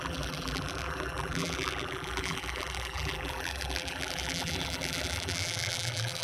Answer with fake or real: fake